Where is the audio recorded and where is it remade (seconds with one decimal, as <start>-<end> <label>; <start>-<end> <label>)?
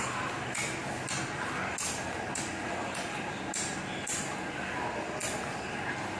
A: 0.0-6.2 recorded